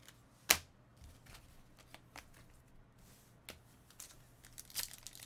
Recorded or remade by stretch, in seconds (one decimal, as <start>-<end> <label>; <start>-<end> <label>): 0.0-5.3 recorded